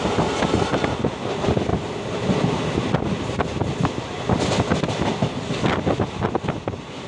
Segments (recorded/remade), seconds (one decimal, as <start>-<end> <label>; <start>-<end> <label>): 0.0-7.1 recorded